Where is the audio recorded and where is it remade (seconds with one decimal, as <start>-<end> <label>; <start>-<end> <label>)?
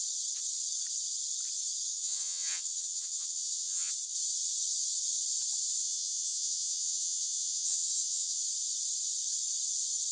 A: 0.0-1.9 recorded; 1.9-3.9 remade; 3.9-5.8 recorded; 5.8-8.4 remade; 8.4-10.1 recorded